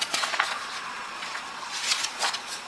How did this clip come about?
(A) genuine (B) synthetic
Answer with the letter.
B